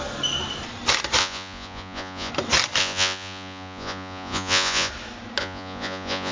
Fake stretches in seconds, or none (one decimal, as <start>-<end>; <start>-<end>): 1.2-2.3; 2.8-4.9; 5.4-6.3